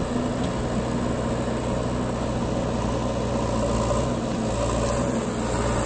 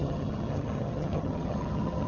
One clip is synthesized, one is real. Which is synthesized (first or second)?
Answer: second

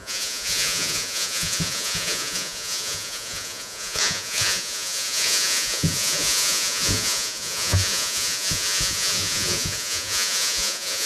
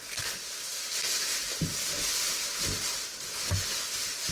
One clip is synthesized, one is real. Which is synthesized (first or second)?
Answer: first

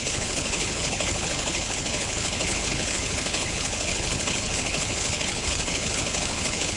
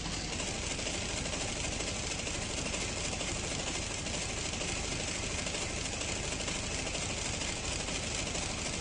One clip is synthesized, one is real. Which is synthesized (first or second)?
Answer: first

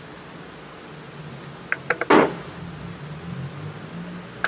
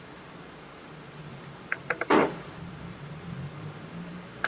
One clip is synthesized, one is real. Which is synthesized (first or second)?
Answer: second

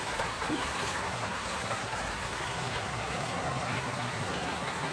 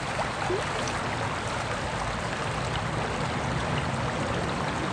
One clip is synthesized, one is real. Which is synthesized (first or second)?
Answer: first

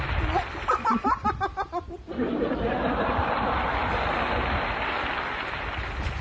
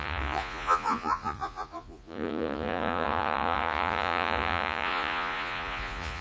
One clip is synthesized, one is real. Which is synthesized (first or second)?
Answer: second